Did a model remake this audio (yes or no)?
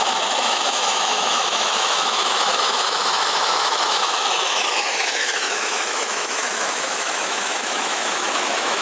yes